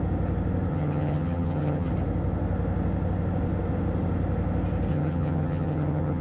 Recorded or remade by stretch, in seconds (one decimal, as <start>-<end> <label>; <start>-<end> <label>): 0.0-0.7 recorded; 0.7-1.9 remade; 1.9-4.9 recorded; 4.9-6.2 remade